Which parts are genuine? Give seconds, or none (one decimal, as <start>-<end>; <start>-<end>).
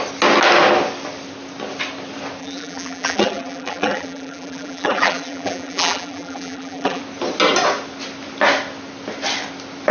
0.0-2.4; 7.0-9.9